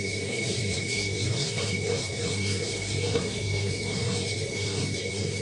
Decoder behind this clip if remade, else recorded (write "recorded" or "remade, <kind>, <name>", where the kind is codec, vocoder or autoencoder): remade, codec, SNAC